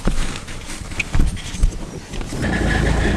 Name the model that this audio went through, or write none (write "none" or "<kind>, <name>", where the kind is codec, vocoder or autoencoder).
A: none